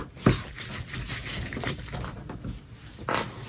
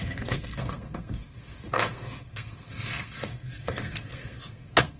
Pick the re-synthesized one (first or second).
second